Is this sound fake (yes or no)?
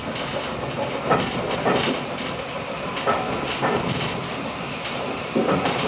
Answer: no